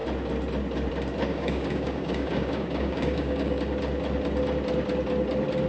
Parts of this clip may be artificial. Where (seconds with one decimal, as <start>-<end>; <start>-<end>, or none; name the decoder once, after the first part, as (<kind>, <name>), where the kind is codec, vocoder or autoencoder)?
1.3-3.6 (codec, DAC)